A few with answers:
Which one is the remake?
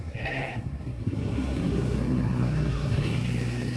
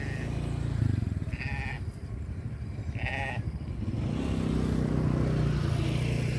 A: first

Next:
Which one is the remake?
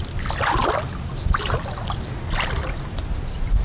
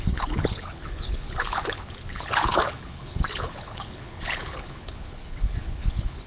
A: second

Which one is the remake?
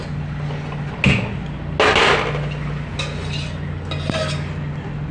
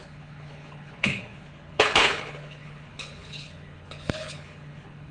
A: second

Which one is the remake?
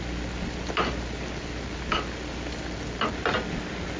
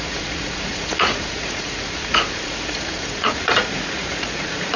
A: second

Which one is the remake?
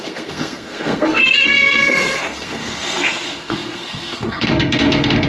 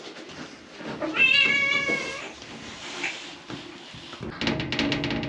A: first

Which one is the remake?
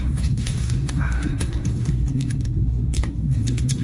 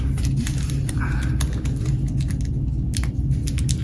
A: first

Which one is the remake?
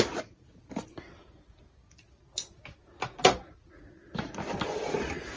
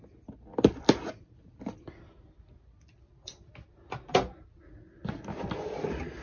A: first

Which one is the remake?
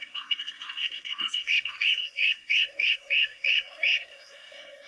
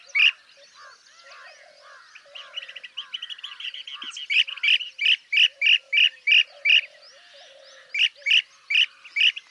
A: first